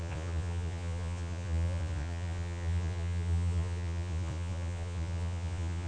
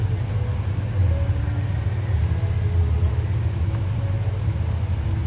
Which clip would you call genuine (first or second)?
second